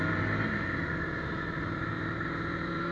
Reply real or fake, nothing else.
fake